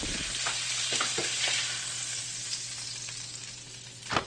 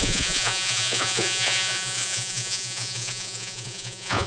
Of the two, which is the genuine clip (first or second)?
first